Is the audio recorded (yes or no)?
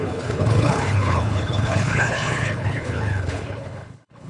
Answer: no